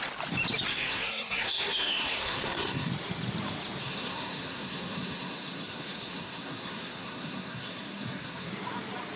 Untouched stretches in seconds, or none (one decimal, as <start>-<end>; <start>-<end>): 0.0-0.7; 2.9-3.8; 8.5-9.2